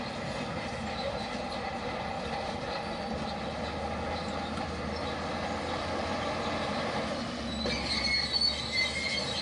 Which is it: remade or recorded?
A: recorded